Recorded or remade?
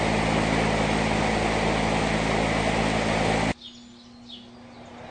recorded